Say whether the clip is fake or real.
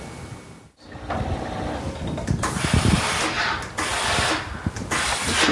real